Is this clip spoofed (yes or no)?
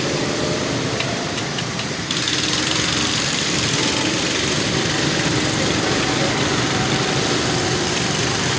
yes